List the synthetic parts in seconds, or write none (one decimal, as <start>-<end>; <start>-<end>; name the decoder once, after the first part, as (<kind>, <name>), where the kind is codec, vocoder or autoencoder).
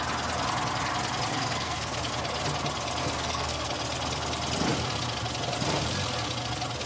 1.3-2.1 (codec, SNAC); 3.0-3.7